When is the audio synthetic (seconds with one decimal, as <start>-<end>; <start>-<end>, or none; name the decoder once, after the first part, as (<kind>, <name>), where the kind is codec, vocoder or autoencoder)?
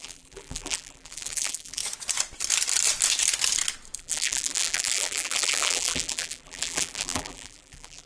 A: 0.0-1.8 (vocoder, BigVGAN v2); 4.0-8.1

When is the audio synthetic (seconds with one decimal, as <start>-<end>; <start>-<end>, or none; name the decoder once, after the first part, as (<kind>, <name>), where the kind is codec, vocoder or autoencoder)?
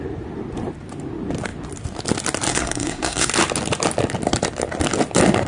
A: 2.5-3.3 (codec, SNAC)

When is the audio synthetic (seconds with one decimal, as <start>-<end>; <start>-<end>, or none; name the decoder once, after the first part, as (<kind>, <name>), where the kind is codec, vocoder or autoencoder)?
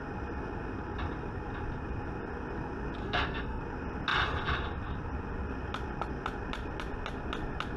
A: 3.0-3.6 (codec, SNAC)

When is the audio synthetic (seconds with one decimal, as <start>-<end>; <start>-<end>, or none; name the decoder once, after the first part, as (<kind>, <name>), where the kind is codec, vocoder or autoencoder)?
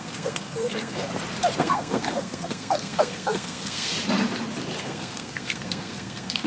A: 0.0-1.1 (codec, SNAC); 1.6-3.9; 4.8-6.5